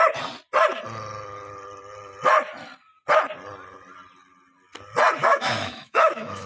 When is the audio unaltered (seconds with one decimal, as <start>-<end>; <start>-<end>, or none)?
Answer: 0.0-5.2